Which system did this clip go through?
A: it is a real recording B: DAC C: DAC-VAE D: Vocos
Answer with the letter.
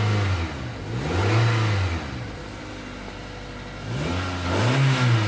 A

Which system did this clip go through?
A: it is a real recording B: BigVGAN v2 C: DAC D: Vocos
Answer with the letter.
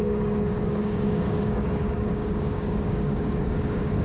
C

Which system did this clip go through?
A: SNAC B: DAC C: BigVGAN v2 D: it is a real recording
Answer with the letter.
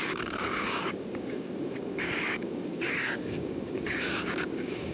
B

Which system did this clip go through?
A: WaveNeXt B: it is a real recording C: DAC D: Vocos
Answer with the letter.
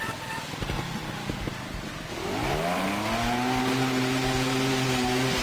B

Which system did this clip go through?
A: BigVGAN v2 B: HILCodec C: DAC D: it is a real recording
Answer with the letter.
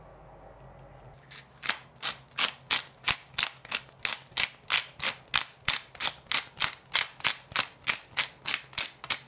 D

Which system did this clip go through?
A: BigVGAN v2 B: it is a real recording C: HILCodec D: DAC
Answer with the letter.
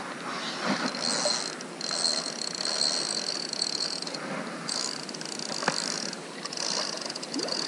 B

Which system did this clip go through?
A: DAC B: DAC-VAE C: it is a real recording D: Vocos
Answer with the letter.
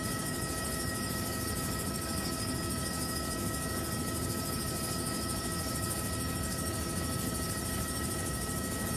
A